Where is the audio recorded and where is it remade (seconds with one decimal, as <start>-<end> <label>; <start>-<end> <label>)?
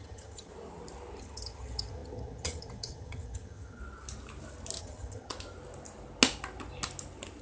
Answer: 0.0-0.5 remade; 0.5-1.2 recorded; 1.2-3.8 remade; 3.8-4.8 recorded; 4.8-5.3 remade; 5.3-7.4 recorded